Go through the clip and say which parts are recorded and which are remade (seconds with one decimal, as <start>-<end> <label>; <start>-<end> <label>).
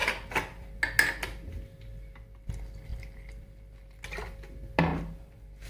0.0-0.8 remade; 0.8-2.9 recorded; 2.9-3.7 remade; 3.7-4.9 recorded; 4.9-5.7 remade